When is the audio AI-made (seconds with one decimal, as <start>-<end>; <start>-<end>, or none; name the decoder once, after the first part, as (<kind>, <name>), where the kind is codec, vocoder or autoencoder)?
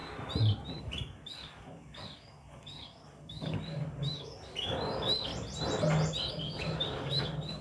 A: 0.8-5.3 (codec, DAC); 6.3-7.6